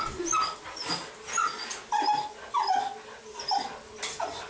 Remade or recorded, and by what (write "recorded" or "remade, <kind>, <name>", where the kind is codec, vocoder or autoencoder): recorded